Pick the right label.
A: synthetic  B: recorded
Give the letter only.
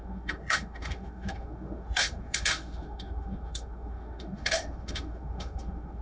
A